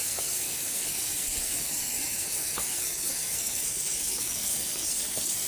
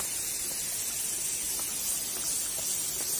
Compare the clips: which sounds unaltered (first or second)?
second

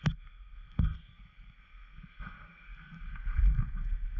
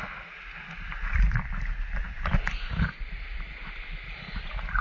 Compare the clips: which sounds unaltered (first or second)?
second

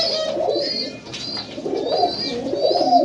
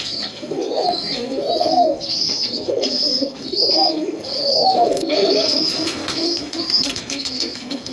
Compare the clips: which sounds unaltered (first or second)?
first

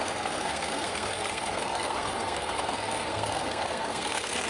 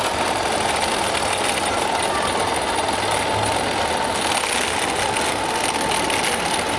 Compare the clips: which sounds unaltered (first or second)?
second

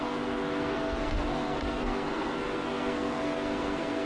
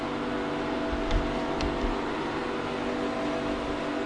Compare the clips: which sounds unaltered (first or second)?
second